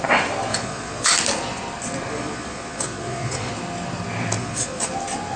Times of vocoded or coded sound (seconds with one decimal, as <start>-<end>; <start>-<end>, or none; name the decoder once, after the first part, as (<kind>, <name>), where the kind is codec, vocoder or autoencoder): 0.5-1.1 (vocoder, Vocos); 2.1-3.5; 4.4-4.9